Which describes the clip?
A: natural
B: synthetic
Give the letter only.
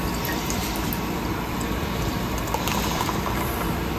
B